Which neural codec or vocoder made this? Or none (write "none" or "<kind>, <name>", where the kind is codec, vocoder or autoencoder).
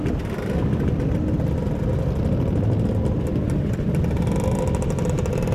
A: none